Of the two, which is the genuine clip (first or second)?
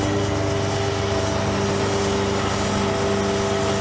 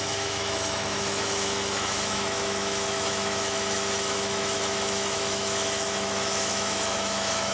first